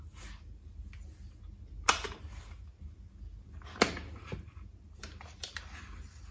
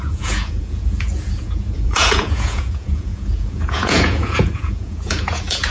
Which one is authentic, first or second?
first